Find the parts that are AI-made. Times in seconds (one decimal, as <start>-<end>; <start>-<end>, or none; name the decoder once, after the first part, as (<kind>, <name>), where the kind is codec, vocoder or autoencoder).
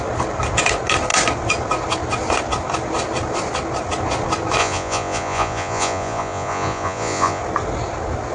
4.6-7.4 (vocoder, Vocos)